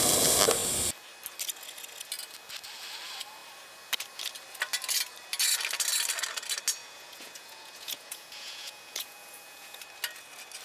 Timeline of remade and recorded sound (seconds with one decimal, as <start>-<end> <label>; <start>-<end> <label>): 0.0-6.8 recorded; 6.8-9.8 remade; 9.8-10.6 recorded